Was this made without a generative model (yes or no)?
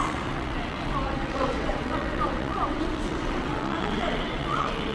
no